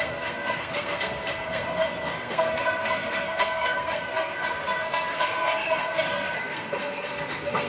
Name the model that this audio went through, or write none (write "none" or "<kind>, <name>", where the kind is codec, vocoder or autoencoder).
codec, SNAC